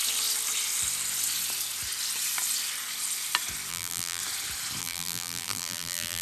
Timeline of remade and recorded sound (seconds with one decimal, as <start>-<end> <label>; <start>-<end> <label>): 0.0-3.7 recorded; 3.7-4.2 remade; 4.2-4.8 recorded; 4.8-6.2 remade